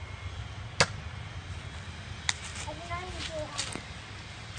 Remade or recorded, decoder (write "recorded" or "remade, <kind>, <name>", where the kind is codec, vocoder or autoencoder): recorded